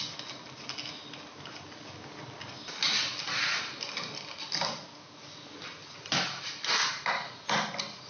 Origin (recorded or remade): recorded